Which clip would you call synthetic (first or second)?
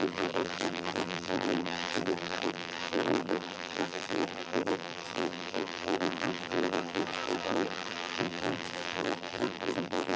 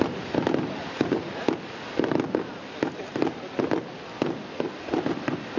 first